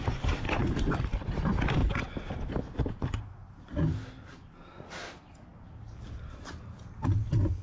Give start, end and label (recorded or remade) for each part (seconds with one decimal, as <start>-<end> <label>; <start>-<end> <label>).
0.0-0.6 recorded; 0.6-1.4 remade; 1.4-1.8 recorded; 1.8-2.8 remade; 2.8-7.6 recorded